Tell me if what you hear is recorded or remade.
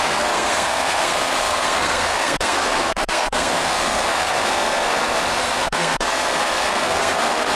remade